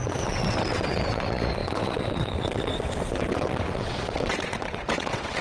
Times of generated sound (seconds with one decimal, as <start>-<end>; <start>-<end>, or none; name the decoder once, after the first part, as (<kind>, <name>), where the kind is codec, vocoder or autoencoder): 0.0-5.4 (vocoder, WaveNeXt)